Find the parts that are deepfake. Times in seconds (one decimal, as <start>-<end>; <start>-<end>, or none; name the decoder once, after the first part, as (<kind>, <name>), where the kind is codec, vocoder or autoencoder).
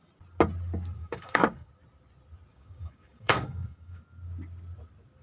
1.0-1.7 (codec, DAC); 2.5-4.0